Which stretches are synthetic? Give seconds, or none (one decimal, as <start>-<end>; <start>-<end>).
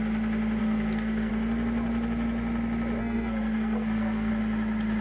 0.6-1.3; 3.0-4.3